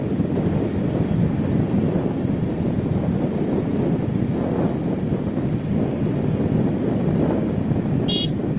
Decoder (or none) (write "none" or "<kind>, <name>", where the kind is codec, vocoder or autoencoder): none